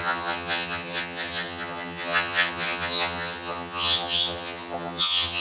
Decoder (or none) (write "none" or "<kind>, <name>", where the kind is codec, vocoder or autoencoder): vocoder, HiFi-GAN